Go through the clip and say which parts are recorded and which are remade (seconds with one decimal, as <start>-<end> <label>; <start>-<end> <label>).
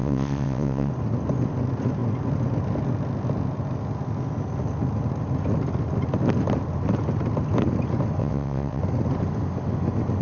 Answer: 0.0-0.9 remade; 0.9-8.2 recorded; 8.2-8.8 remade; 8.8-10.2 recorded